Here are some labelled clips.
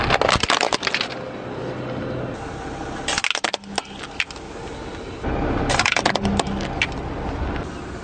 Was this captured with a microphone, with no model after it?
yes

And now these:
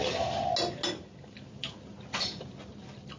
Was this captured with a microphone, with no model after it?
yes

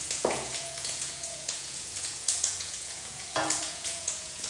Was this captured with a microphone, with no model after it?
no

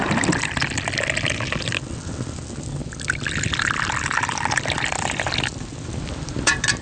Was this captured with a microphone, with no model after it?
yes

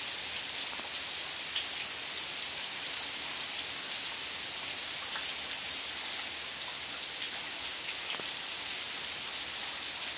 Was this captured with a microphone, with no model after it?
yes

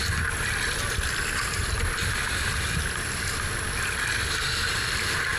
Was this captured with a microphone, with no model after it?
yes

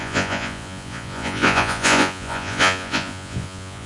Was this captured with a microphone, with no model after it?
no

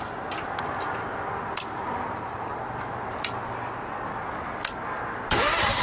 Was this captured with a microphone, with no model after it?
yes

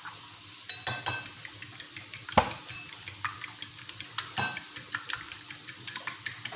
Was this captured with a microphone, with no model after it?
yes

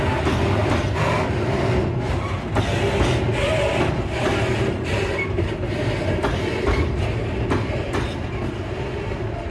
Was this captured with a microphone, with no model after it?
yes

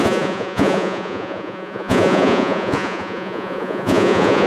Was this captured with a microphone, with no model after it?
no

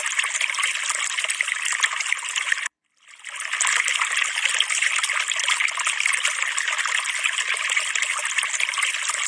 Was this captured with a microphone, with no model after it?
yes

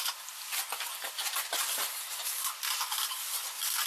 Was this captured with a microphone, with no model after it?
yes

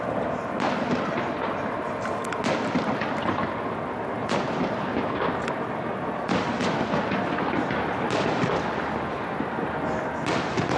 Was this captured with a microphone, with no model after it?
no